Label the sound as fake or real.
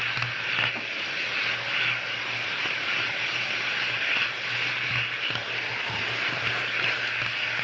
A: real